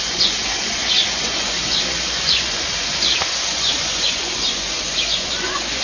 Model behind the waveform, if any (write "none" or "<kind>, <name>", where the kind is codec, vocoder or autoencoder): vocoder, Vocos